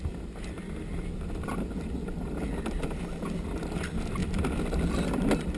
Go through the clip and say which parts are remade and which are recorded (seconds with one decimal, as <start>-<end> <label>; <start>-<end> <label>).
0.0-5.6 recorded

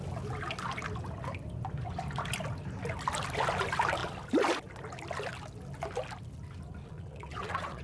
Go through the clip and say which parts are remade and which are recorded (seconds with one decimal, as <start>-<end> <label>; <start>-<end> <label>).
0.0-6.8 recorded; 6.8-7.8 remade

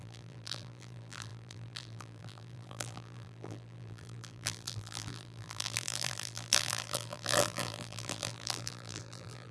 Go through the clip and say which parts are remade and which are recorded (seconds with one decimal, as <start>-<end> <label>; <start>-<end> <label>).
0.0-9.5 remade

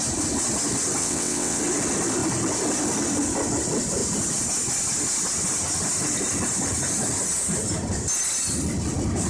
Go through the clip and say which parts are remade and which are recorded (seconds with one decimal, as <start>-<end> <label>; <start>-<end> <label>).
0.0-1.0 recorded; 1.0-1.6 remade; 1.6-9.3 recorded

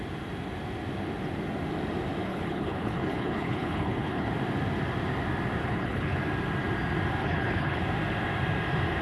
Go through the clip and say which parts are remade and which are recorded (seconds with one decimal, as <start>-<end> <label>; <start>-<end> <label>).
0.0-2.3 recorded; 2.3-4.3 remade; 4.3-5.6 recorded; 5.6-6.2 remade; 6.2-7.2 recorded; 7.2-7.8 remade; 7.8-9.0 recorded

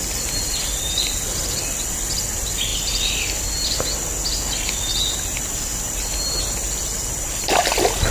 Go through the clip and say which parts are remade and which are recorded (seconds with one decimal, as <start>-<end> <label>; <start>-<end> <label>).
0.0-2.7 remade; 2.7-6.4 recorded; 6.4-8.1 remade

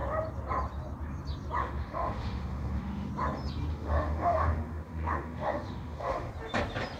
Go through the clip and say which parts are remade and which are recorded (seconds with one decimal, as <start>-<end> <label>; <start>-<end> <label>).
0.0-1.6 recorded; 1.6-3.1 remade; 3.1-3.7 recorded; 3.7-6.3 remade; 6.3-7.0 recorded